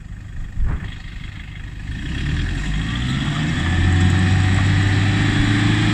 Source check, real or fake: real